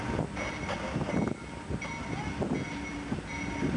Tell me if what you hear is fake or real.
real